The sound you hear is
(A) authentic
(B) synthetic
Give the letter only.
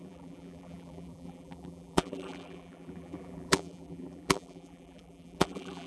B